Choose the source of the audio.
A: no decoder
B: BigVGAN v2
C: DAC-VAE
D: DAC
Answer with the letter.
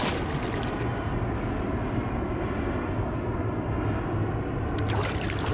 A